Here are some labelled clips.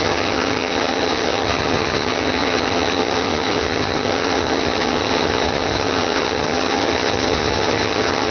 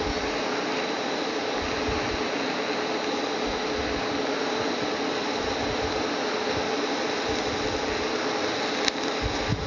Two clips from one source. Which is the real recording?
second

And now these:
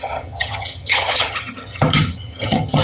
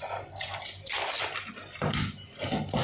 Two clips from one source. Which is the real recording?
second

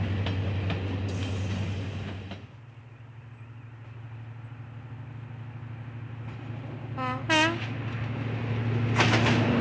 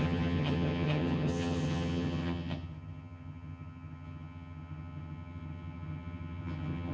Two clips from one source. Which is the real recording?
first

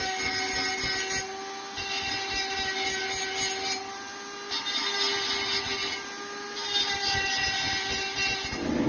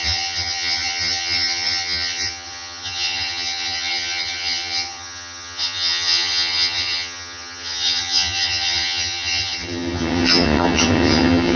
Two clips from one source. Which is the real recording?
first